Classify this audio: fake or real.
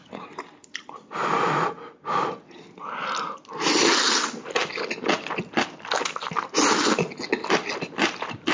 real